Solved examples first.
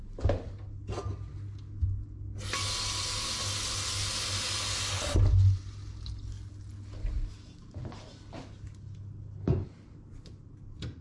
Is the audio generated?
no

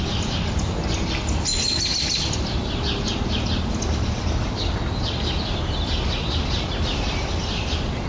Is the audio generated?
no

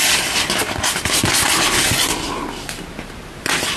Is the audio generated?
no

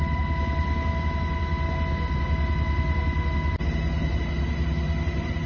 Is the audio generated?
no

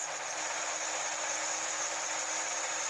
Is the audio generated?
no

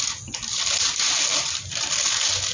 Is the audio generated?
no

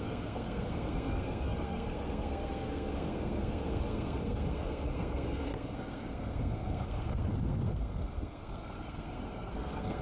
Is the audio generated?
yes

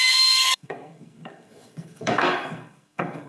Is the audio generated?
yes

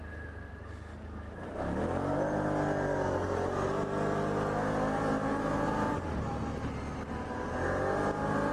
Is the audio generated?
no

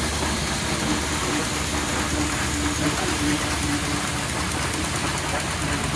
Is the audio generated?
no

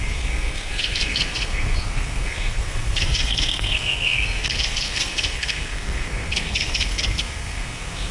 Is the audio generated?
yes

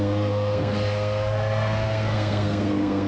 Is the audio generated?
yes